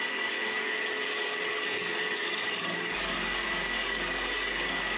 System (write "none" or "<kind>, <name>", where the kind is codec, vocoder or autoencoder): codec, DAC